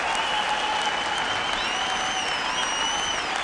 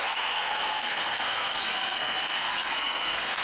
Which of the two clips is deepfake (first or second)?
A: second